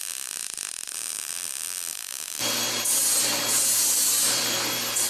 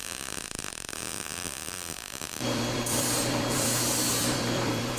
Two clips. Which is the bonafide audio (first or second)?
first